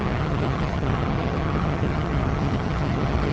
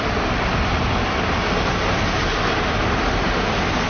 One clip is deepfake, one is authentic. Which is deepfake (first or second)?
first